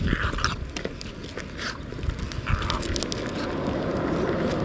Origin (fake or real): real